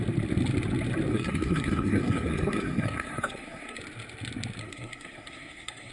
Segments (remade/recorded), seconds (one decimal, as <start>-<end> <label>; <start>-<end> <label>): 0.0-1.1 recorded; 1.1-3.8 remade; 3.8-4.6 recorded; 4.6-5.9 remade